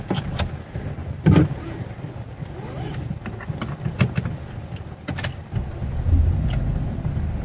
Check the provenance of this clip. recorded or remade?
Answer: recorded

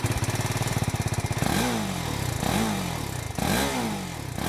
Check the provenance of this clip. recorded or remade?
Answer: recorded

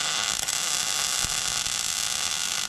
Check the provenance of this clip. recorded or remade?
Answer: recorded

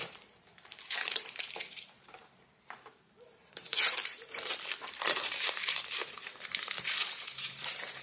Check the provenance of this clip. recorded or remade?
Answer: remade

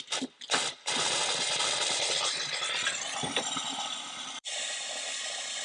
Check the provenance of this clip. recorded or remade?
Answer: remade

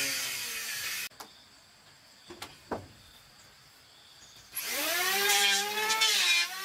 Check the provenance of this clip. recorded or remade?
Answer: remade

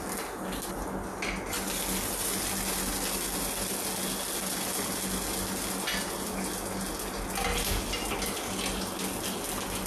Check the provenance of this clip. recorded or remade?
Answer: recorded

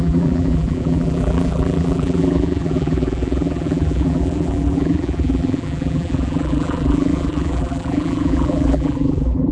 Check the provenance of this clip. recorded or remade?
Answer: remade